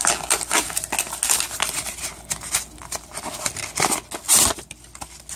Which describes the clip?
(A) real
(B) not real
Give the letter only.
A